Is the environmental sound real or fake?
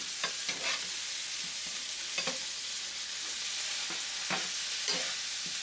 real